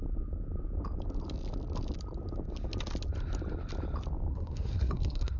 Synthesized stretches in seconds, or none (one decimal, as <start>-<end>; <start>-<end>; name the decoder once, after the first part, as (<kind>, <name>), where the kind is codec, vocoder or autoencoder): 4.3-5.4 (codec, SNAC)